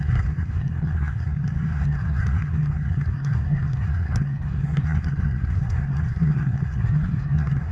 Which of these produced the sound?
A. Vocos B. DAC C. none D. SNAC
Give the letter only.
D